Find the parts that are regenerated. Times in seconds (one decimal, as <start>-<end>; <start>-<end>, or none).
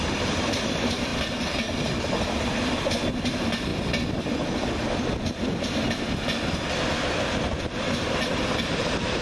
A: 0.0-1.1; 3.2-3.7; 7.6-9.2